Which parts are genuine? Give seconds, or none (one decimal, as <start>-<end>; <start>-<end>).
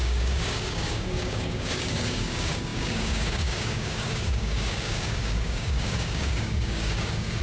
none